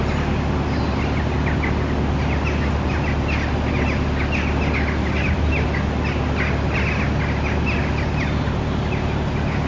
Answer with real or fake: real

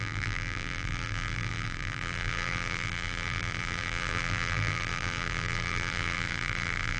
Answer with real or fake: fake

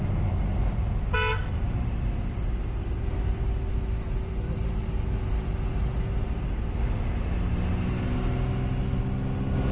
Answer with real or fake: real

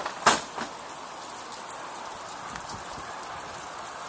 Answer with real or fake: real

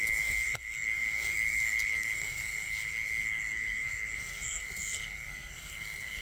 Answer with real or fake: fake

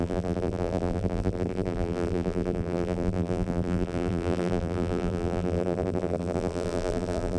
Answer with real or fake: fake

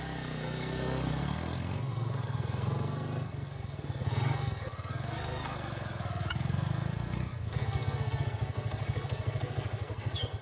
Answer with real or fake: fake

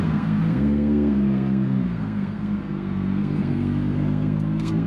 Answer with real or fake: fake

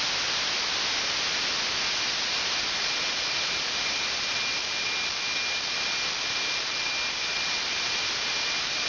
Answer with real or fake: real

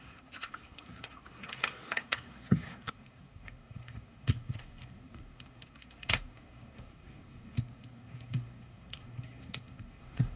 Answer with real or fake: fake